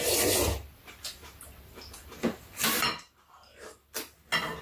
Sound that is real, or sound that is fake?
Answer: real